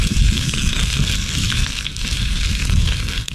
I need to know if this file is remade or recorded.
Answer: remade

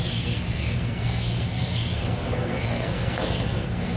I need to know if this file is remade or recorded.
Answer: remade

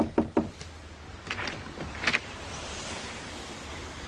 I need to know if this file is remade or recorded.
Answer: recorded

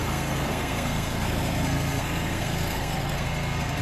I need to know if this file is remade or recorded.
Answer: remade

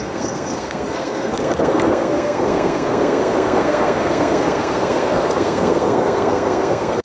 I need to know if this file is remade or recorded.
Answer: remade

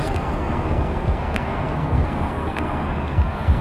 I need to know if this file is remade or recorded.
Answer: remade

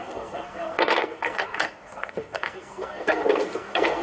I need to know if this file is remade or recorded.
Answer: remade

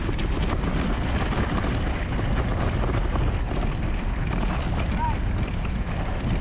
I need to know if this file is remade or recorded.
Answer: recorded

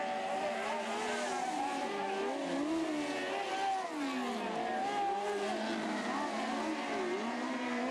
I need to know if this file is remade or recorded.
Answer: recorded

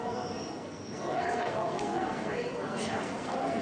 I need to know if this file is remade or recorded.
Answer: remade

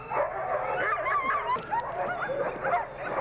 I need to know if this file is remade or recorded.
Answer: recorded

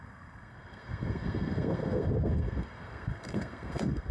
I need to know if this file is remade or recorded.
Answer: remade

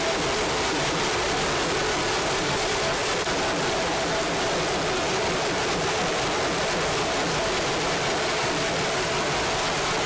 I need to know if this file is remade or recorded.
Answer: recorded